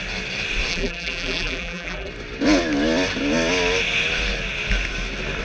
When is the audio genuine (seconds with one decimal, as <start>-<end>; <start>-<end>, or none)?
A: 0.0-0.7; 2.1-5.4